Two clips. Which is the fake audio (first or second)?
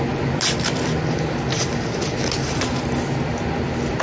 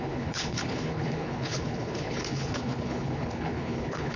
second